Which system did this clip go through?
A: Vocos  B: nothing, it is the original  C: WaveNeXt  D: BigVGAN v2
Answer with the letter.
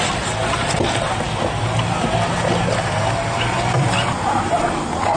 B